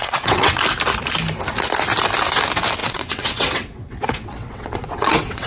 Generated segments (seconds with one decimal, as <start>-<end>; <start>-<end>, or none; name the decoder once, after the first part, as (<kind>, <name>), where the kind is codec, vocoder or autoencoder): 0.0-0.6 (vocoder, WaveNeXt); 2.8-5.5